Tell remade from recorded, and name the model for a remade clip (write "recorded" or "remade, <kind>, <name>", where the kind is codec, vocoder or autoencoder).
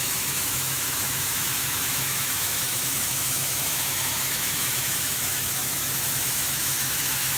remade, autoencoder, DAC-VAE